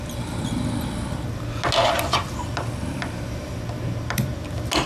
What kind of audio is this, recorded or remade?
recorded